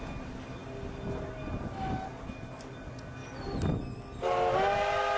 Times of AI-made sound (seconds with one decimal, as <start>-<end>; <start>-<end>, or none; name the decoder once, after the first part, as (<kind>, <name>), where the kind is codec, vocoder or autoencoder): none